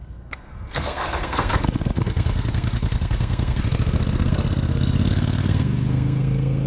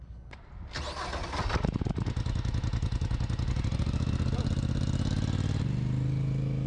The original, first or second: second